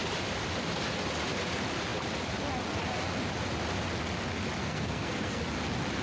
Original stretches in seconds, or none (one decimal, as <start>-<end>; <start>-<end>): 0.0-4.6; 5.4-6.0